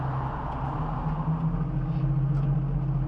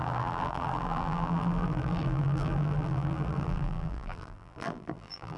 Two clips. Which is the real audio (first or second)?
first